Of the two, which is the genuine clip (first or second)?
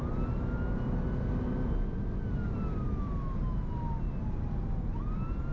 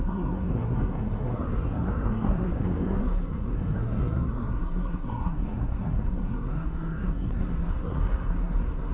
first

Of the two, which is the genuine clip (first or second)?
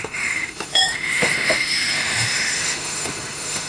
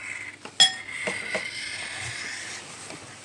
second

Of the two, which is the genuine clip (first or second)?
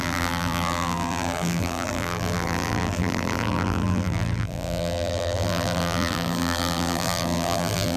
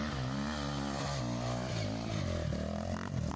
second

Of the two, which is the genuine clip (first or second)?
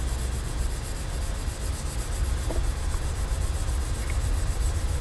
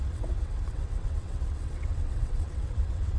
first